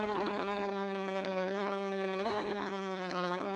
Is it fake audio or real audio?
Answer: fake